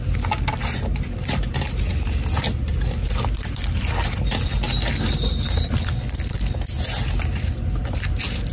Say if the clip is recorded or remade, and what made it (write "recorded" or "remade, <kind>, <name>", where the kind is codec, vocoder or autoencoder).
recorded